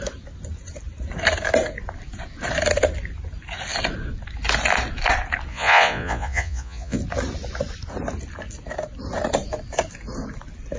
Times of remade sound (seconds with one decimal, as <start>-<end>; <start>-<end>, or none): 5.5-7.0